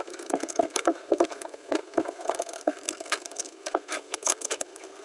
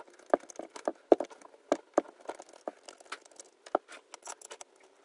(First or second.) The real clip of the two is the second